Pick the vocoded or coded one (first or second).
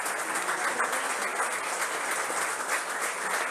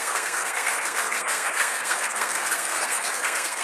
second